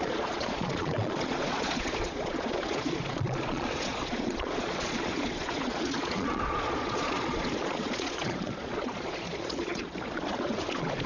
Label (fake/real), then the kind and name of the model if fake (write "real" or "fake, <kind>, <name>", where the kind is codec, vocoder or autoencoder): fake, vocoder, Vocos